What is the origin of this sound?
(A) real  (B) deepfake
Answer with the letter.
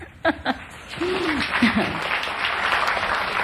B